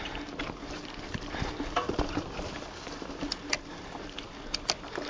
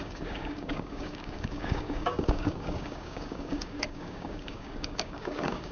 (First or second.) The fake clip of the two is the second